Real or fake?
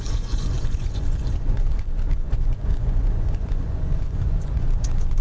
fake